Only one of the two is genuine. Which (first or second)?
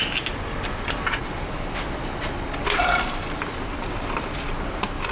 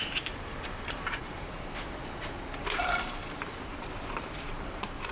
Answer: first